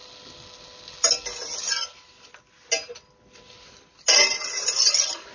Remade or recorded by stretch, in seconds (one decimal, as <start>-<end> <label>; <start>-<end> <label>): 0.0-5.3 recorded